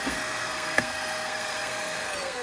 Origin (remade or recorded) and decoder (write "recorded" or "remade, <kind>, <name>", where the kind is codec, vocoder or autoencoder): remade, codec, SNAC